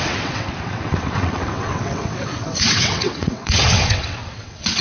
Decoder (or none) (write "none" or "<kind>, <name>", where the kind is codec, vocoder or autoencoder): vocoder, WaveNeXt